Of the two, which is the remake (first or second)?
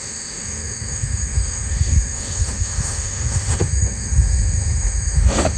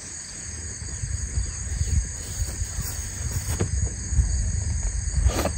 first